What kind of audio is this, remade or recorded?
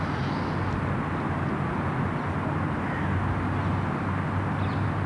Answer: recorded